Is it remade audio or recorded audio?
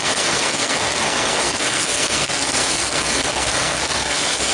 remade